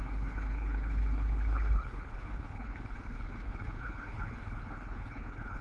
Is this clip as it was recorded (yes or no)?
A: no